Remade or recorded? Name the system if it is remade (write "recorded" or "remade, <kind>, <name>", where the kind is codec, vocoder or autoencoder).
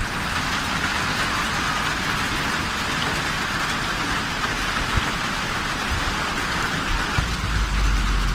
recorded